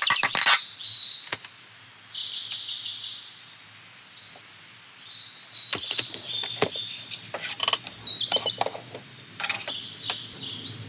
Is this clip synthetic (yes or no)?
no